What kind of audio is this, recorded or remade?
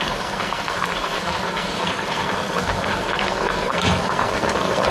remade